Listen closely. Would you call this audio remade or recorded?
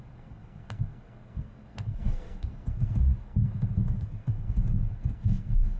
remade